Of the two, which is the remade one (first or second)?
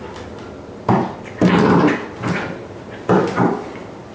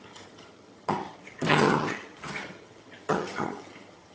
second